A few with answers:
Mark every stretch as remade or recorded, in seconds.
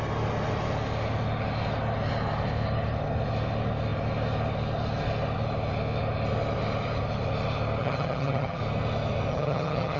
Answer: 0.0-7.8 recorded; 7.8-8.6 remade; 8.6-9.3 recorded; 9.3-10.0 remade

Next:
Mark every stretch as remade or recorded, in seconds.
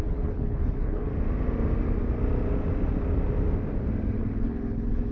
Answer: 0.0-1.1 remade; 1.1-4.2 recorded; 4.2-5.1 remade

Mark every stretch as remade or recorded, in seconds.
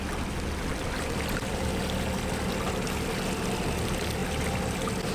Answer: 0.0-0.7 recorded; 0.7-1.5 remade; 1.5-5.1 recorded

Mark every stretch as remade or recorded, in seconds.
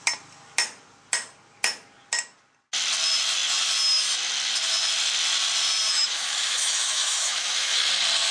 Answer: 0.0-5.9 recorded; 5.9-7.9 remade; 7.9-8.3 recorded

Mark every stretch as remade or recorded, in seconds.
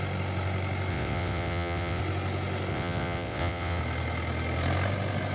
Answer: 0.0-0.9 recorded; 0.9-2.0 remade; 2.0-2.7 recorded; 2.7-3.8 remade; 3.8-5.3 recorded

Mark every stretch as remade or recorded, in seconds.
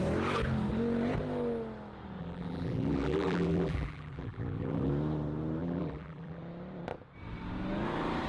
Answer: 0.0-2.2 recorded; 2.2-4.9 remade; 4.9-5.6 recorded; 5.6-6.4 remade; 6.4-8.3 recorded